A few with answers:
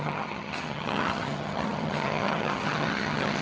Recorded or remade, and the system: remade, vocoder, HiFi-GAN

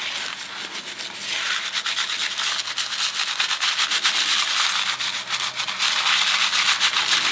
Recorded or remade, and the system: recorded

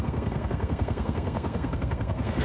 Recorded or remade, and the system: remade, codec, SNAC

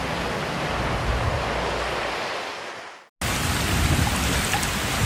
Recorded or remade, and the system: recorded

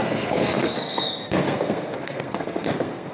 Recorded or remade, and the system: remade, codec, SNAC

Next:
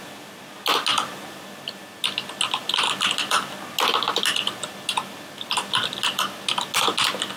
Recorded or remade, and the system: recorded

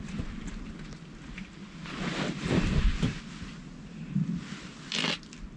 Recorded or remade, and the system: recorded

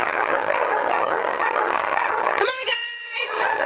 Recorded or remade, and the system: remade, vocoder, HiFi-GAN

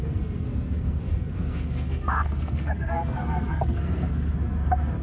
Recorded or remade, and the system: remade, codec, SNAC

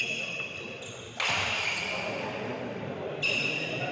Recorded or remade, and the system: remade, vocoder, BigVGAN v2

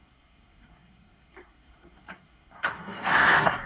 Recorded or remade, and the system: remade, codec, SNAC